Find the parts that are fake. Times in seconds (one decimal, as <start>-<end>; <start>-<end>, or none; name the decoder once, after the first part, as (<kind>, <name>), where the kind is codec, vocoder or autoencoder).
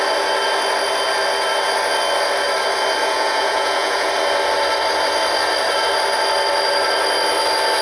3.0-4.1 (vocoder, Vocos)